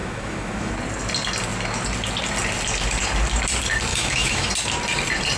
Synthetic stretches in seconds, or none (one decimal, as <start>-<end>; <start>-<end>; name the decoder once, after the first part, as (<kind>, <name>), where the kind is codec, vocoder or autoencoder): 0.0-0.7 (autoencoder, DAC-VAE); 3.9-4.5